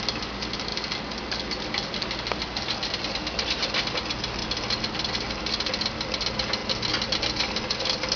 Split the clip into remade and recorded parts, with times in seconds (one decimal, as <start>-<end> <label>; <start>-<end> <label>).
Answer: 0.0-8.2 recorded